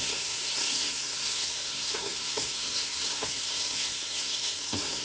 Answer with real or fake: fake